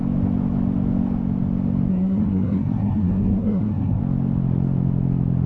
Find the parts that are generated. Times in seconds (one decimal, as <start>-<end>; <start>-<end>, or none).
1.9-4.0